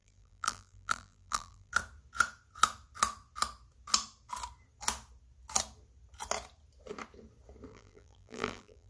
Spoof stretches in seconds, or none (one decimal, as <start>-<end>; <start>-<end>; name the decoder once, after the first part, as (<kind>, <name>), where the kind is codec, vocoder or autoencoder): 0.0-1.7 (vocoder, BigVGAN v2); 7.7-8.9